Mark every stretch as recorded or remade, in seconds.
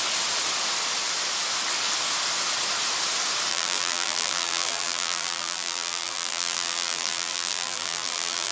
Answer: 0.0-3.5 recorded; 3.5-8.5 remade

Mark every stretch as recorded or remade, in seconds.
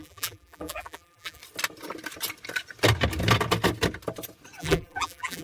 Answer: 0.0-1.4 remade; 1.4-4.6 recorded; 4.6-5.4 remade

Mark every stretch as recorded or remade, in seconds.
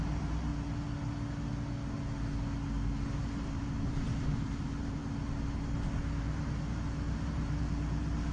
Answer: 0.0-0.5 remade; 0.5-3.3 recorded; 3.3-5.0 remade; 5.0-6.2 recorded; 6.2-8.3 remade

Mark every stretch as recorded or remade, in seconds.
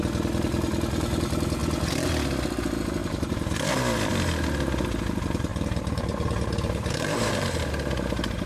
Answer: 0.0-3.0 recorded; 3.0-3.7 remade; 3.7-5.5 recorded; 5.5-7.7 remade; 7.7-8.5 recorded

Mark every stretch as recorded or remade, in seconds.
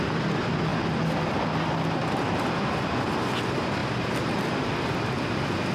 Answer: 0.0-3.8 recorded; 3.8-4.3 remade; 4.3-5.7 recorded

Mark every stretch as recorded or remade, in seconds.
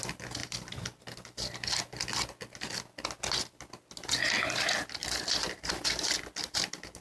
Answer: 0.0-5.0 recorded; 5.0-6.1 remade; 6.1-7.0 recorded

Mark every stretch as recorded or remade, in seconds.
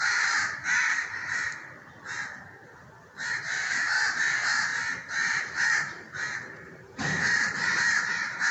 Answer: 0.0-0.6 remade; 0.6-3.3 recorded; 3.3-4.7 remade; 4.7-5.4 recorded; 5.4-8.5 remade